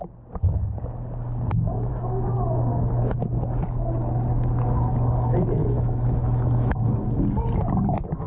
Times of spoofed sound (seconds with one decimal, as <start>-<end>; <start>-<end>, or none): 5.6-7.2